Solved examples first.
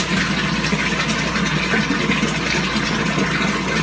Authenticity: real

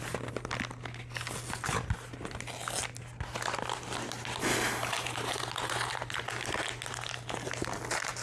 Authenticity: real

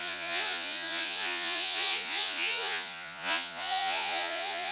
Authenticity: fake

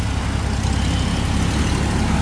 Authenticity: real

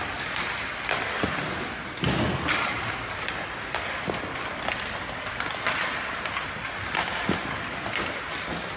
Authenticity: real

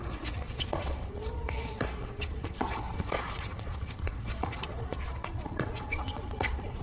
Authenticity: fake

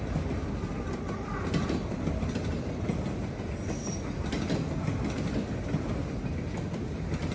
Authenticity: real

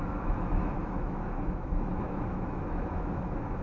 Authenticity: fake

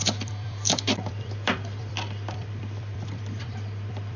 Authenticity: fake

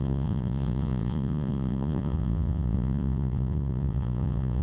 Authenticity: fake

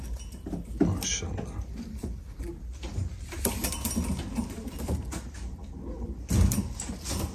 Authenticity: real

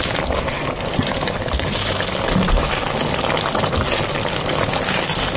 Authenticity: real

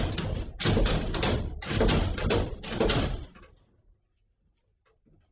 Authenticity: real